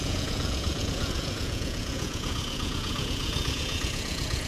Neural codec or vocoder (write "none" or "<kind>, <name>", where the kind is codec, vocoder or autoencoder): vocoder, Vocos